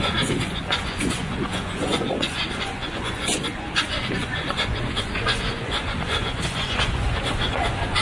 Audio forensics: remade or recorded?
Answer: remade